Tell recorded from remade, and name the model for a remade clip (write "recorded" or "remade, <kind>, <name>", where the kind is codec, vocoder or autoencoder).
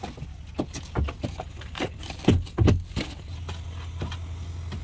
recorded